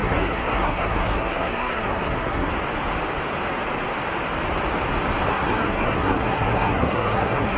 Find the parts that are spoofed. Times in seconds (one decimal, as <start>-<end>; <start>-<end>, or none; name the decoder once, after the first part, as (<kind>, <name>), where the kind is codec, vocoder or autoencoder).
0.0-2.5 (codec, SNAC); 5.3-7.6